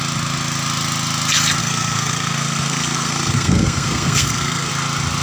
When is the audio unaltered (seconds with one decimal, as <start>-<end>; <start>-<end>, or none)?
0.0-1.6; 4.7-5.2